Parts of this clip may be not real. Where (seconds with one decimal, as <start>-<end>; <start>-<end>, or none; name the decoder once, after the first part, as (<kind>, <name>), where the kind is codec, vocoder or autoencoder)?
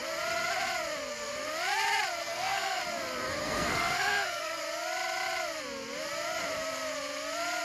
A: 2.2-2.8 (codec, SNAC); 3.4-4.6